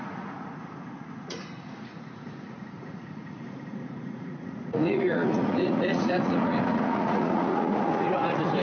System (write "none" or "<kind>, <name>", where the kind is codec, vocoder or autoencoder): vocoder, Vocos